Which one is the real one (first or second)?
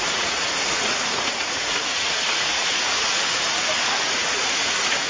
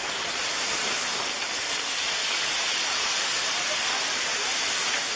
second